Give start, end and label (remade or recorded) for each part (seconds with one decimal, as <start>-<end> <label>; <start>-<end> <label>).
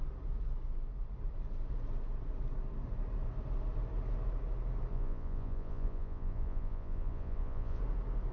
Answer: 0.0-4.9 recorded; 4.9-7.8 remade; 7.8-8.3 recorded